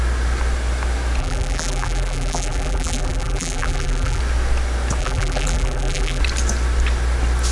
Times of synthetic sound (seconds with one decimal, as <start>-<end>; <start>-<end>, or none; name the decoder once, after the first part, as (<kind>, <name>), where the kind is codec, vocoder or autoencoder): 1.2-4.2 (vocoder, BigVGAN v2); 5.0-6.2